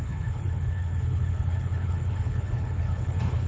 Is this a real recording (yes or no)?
no